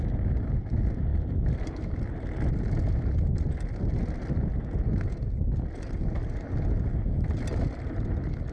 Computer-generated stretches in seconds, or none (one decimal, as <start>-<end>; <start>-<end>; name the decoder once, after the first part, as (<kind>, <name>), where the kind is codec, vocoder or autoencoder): none